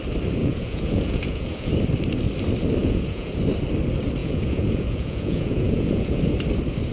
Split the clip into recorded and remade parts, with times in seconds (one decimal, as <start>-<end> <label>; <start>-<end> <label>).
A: 0.0-0.4 recorded; 0.4-1.7 remade; 1.7-2.8 recorded; 2.8-3.4 remade; 3.4-4.2 recorded; 4.2-6.2 remade; 6.2-6.9 recorded